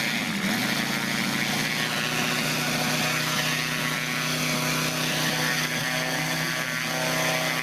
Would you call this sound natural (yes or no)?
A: yes